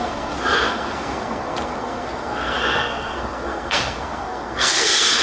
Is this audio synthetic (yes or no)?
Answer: yes